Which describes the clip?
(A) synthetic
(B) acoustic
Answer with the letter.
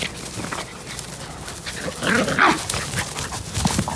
B